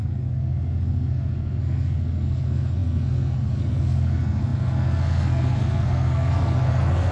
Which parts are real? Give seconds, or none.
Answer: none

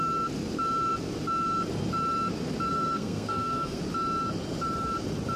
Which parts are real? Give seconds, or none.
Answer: 0.0-2.7; 3.8-5.4

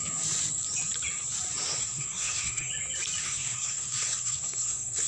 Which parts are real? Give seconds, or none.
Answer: 0.0-1.8; 2.7-3.2